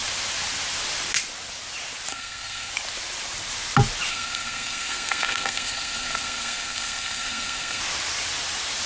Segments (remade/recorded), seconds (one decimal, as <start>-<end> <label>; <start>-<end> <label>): 0.0-2.1 recorded; 2.1-2.7 remade; 2.7-4.1 recorded; 4.1-7.8 remade; 7.8-8.9 recorded